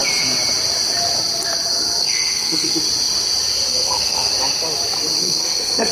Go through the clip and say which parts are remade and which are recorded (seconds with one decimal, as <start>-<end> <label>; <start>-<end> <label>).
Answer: 0.0-2.0 recorded; 2.0-2.7 remade; 2.7-3.7 recorded; 3.7-4.3 remade; 4.3-5.2 recorded; 5.2-5.9 remade